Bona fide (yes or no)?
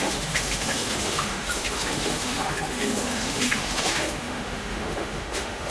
no